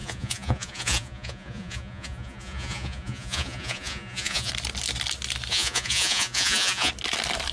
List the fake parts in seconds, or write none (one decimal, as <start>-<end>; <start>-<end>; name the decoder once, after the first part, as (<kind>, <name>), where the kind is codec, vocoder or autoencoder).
0.0-4.5 (vocoder, Vocos); 5.5-6.9